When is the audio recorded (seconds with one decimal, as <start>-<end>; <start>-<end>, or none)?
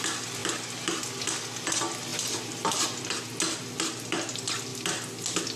0.0-5.6